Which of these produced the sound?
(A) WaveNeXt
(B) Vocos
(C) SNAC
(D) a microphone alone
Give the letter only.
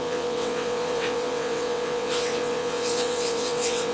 A